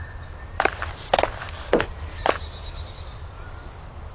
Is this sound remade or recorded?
recorded